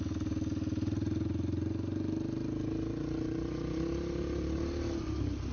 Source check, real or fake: real